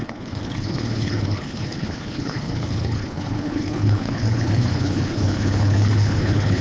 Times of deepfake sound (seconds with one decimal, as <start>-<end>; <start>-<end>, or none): 0.0-6.6